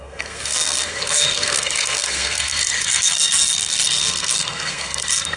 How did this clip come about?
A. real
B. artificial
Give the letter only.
B